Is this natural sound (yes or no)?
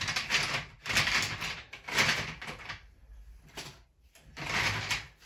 yes